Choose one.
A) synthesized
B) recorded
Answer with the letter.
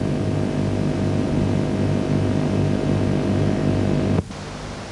B